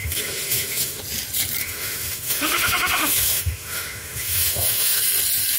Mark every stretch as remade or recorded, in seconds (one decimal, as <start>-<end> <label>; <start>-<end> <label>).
0.0-1.0 remade; 1.0-1.6 recorded; 1.6-5.0 remade; 5.0-5.6 recorded